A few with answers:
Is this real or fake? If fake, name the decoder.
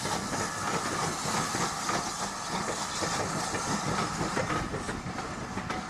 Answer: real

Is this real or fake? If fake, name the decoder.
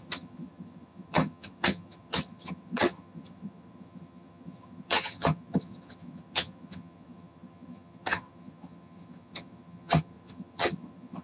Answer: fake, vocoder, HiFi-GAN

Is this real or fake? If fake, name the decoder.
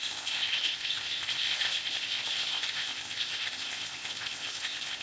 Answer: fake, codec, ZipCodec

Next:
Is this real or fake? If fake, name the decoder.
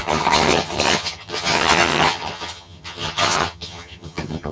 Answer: fake, vocoder, HiFi-GAN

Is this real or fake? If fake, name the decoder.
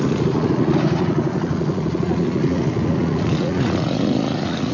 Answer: fake, vocoder, Vocos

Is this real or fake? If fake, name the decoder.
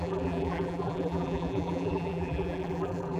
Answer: fake, vocoder, BigVGAN v2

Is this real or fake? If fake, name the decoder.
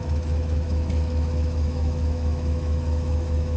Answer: fake, autoencoder, DAC-VAE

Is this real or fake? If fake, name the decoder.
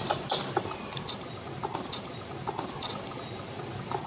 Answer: real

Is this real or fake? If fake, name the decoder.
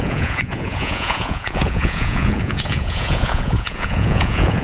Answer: fake, vocoder, Vocos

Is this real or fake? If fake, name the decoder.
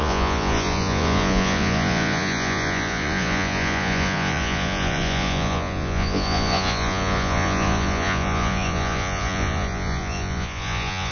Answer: fake, vocoder, Vocos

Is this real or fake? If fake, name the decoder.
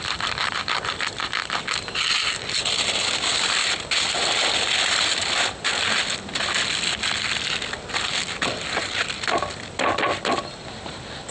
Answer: real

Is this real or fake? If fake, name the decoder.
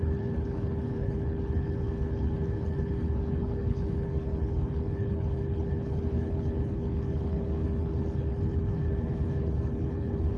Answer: fake, codec, HILCodec